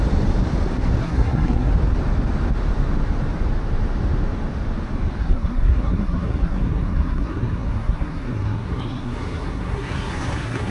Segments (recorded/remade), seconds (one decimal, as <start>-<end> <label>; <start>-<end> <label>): 0.0-1.0 recorded; 1.0-1.7 remade; 1.7-5.2 recorded; 5.2-10.7 remade